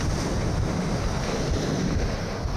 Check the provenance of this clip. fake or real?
real